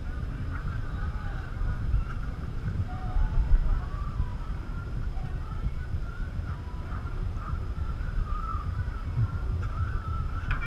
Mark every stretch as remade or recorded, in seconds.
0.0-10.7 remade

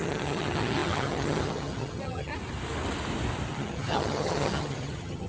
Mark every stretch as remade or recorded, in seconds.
0.0-2.3 remade; 2.3-3.5 recorded; 3.5-5.3 remade

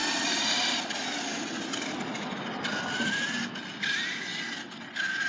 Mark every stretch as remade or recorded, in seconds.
0.0-5.3 recorded